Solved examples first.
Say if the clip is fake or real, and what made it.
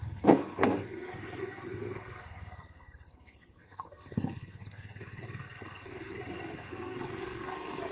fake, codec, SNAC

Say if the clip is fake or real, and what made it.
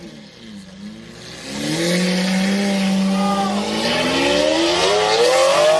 real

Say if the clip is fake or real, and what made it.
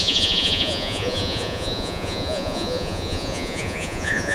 fake, vocoder, Vocos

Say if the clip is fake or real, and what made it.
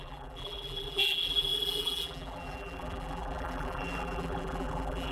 fake, vocoder, BigVGAN v2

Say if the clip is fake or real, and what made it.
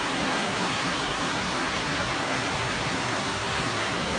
fake, codec, SNAC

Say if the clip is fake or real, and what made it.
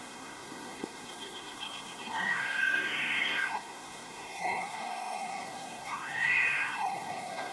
fake, codec, SNAC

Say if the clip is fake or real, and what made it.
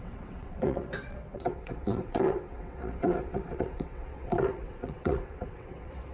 fake, vocoder, WaveNeXt